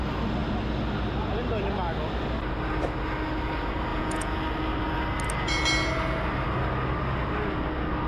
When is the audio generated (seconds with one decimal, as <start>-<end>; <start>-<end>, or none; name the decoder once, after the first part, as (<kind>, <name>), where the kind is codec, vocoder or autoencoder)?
3.9-4.4 (vocoder, Vocos)